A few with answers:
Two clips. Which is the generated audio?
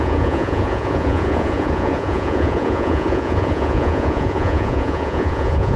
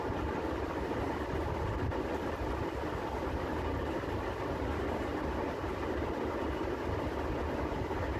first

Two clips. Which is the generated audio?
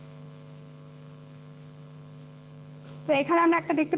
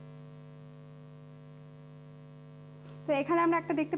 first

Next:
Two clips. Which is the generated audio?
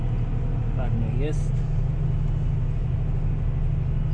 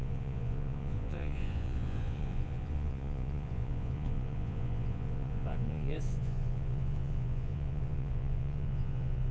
second